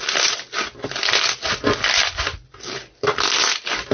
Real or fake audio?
real